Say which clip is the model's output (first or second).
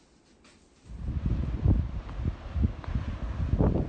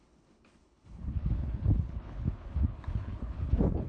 second